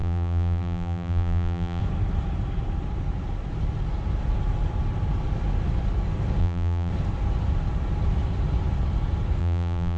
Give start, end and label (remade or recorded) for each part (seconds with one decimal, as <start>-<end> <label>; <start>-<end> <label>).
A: 0.0-1.8 remade; 1.8-6.4 recorded; 6.4-6.9 remade; 6.9-9.4 recorded; 9.4-10.0 remade

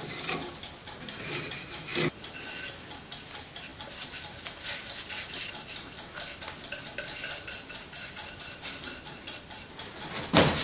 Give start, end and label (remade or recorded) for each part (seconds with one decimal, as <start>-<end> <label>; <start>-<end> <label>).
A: 0.0-0.8 recorded; 0.8-1.5 remade; 1.5-10.6 recorded

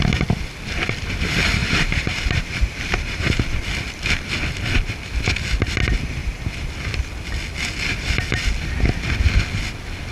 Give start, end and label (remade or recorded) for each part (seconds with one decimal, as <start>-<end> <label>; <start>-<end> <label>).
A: 0.0-1.6 recorded; 1.6-3.4 remade; 3.4-6.2 recorded; 6.2-6.7 remade; 6.7-10.1 recorded

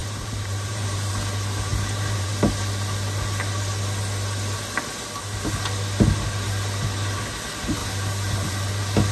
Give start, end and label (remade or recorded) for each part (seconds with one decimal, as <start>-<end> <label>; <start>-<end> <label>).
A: 0.0-1.1 remade; 1.1-1.7 recorded; 1.7-2.3 remade; 2.3-7.8 recorded; 7.8-8.7 remade; 8.7-9.1 recorded

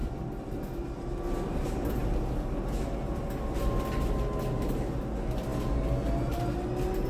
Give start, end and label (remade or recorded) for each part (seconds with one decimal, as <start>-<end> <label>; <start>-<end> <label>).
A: 0.0-7.1 recorded